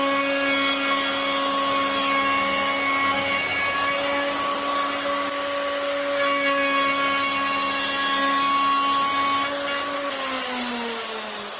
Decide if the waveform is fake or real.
real